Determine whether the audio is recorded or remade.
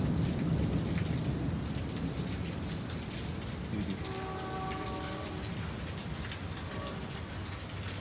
recorded